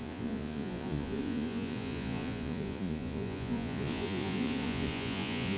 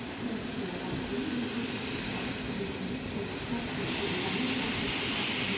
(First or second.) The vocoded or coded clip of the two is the first